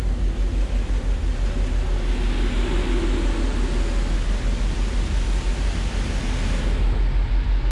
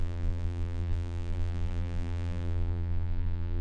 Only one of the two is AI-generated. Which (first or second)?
second